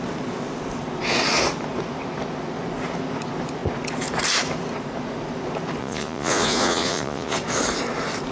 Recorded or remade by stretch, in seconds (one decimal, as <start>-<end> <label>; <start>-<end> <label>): 0.0-5.8 recorded; 5.8-7.4 remade; 7.4-8.3 recorded